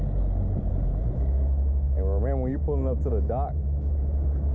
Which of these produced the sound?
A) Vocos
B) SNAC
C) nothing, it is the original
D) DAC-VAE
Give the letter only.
C